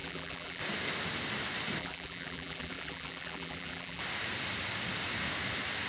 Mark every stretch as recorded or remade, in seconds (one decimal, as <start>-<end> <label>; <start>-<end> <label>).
0.0-0.6 remade; 0.6-1.8 recorded; 1.8-4.0 remade; 4.0-5.9 recorded